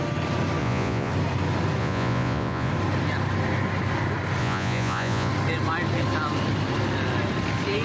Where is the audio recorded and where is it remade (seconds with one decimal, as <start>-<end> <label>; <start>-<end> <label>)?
0.0-0.6 recorded; 0.6-1.1 remade; 1.1-1.8 recorded; 1.8-2.7 remade; 2.7-4.4 recorded; 4.4-5.3 remade; 5.3-7.8 recorded